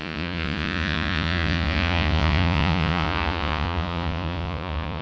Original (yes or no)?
no